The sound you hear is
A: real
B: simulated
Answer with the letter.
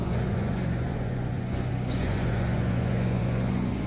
B